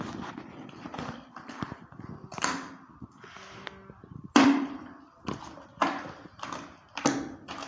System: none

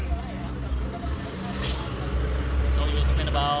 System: none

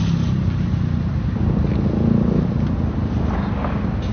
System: none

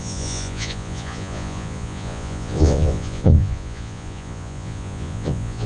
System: vocoder, Vocos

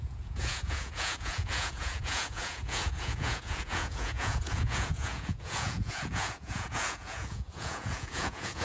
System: vocoder, Vocos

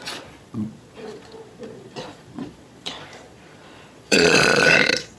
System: vocoder, Vocos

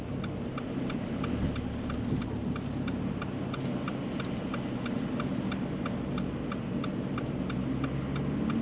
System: none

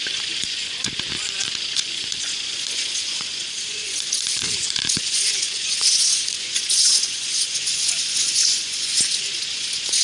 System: vocoder, Vocos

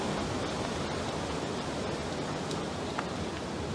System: none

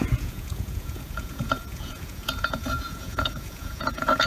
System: vocoder, Vocos